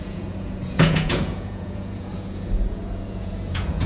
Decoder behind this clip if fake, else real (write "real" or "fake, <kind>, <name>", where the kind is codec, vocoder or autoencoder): fake, vocoder, Vocos